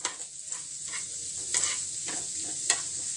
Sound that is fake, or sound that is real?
real